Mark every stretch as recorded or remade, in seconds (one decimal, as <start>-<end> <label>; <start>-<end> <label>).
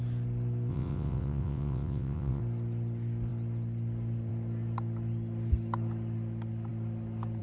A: 0.0-0.7 recorded; 0.7-2.4 remade; 2.4-7.4 recorded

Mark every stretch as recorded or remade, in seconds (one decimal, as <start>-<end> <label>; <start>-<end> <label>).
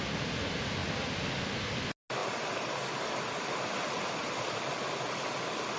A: 0.0-5.8 recorded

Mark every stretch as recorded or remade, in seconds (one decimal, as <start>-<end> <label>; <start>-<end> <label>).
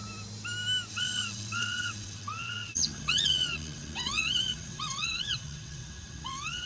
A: 0.0-0.9 recorded; 0.9-6.7 remade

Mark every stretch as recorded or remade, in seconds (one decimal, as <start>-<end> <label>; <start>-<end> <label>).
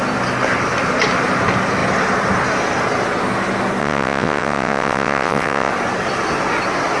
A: 0.0-3.8 recorded; 3.8-5.7 remade; 5.7-7.0 recorded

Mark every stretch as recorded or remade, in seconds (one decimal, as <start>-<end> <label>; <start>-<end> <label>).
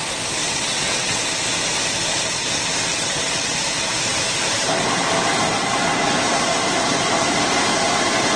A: 0.0-0.4 recorded; 0.4-1.2 remade; 1.2-2.9 recorded; 2.9-3.6 remade; 3.6-8.4 recorded